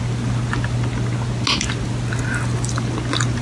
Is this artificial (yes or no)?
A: no